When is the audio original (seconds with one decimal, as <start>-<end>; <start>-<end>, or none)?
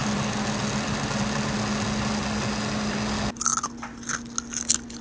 0.0-5.0